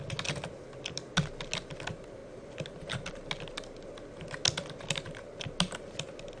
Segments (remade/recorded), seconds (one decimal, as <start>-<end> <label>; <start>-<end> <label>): 0.0-6.4 recorded